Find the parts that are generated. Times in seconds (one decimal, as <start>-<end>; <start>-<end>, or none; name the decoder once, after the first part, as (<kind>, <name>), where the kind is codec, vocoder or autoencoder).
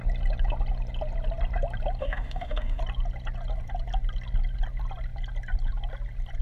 2.0-2.8 (autoencoder, DAC-VAE)